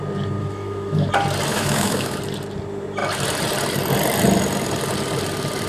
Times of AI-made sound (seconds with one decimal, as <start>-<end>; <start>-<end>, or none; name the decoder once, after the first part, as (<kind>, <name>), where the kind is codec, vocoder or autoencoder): 0.4-1.1 (autoencoder, DAC-VAE); 1.5-2.2